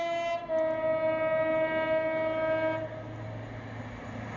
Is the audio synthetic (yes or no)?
no